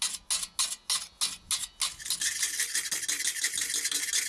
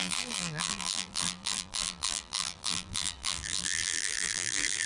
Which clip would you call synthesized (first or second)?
second